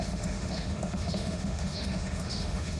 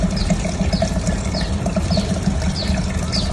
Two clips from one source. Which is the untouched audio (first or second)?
second